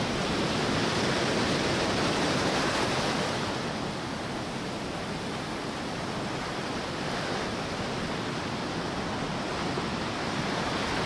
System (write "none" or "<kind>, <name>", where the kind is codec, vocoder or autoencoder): none